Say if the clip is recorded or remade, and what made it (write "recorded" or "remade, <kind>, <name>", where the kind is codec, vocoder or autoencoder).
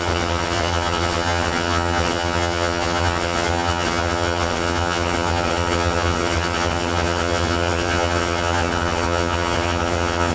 remade, vocoder, HiFi-GAN